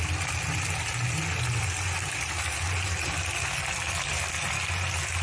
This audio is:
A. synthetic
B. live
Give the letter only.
B